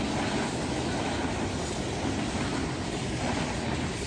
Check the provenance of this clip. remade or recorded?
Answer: recorded